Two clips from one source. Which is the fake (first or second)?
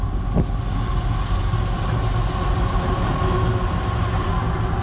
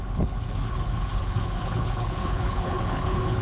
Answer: second